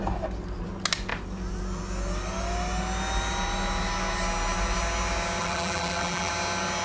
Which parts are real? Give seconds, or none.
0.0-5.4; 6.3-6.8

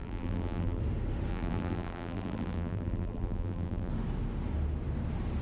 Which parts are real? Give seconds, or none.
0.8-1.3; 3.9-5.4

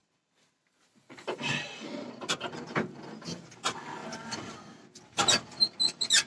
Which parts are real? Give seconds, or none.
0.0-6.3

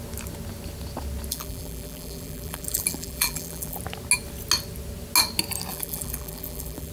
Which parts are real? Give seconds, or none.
0.0-1.3; 3.8-5.7

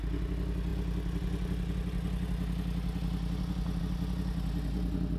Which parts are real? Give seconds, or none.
0.0-5.2

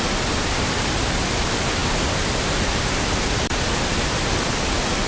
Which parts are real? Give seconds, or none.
0.0-5.1